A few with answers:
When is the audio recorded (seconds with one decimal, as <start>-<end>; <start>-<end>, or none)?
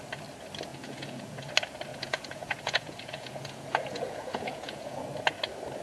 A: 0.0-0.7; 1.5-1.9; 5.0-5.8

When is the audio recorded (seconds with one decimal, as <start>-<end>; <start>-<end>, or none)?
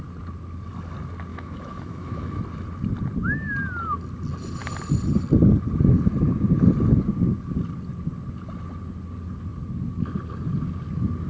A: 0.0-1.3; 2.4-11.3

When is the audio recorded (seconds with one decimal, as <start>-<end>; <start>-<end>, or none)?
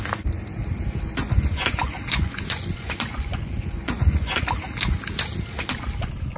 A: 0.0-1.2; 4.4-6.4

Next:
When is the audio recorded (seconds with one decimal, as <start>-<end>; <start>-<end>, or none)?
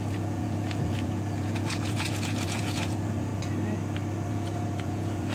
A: 3.3-4.3